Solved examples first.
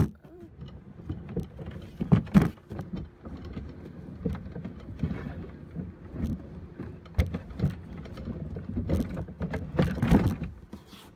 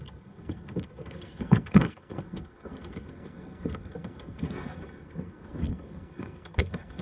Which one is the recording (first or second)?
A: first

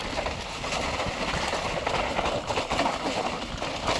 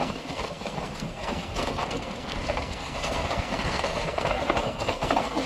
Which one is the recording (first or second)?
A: first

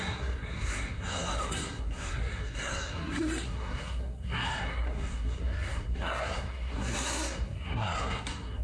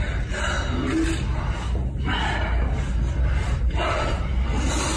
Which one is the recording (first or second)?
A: second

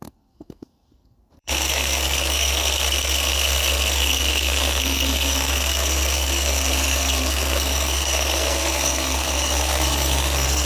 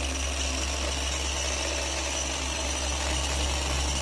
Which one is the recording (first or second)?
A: second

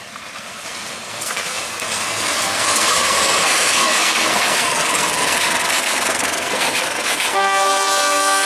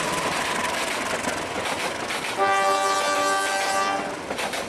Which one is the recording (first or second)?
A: second